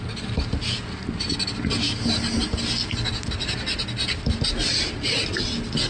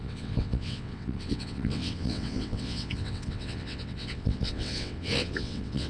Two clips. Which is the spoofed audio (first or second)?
second